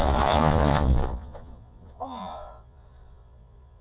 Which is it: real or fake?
fake